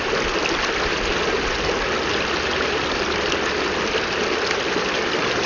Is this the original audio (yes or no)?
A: yes